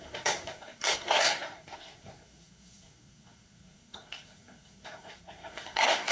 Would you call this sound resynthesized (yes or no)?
yes